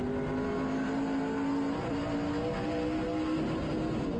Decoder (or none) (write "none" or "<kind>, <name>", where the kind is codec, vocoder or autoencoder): none